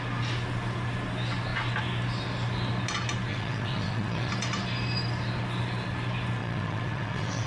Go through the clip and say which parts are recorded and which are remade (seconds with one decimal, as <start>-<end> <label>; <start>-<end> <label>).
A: 0.0-3.3 recorded; 3.3-4.3 remade; 4.3-6.4 recorded; 6.4-7.5 remade